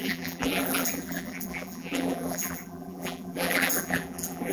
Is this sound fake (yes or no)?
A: yes